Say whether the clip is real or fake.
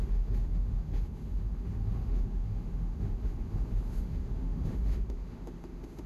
fake